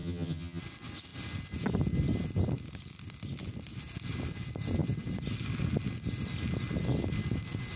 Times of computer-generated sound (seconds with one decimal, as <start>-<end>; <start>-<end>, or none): 0.0-0.6